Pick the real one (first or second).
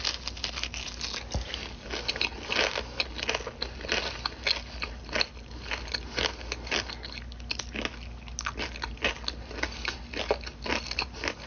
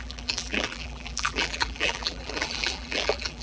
first